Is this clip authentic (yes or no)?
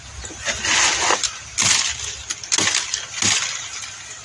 yes